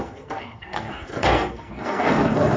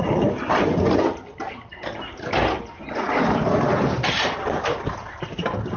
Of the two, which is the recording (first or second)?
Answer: second